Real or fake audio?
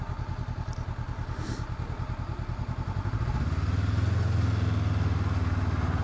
real